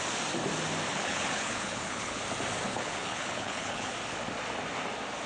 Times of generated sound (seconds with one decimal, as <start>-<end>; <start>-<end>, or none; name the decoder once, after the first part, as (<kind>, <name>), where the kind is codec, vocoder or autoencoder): 0.9-2.2 (codec, HILCodec); 2.7-3.9